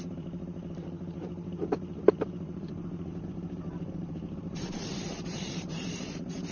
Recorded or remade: remade